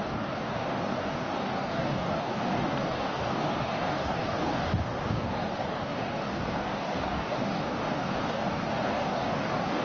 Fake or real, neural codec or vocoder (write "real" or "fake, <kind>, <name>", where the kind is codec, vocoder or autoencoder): fake, codec, DAC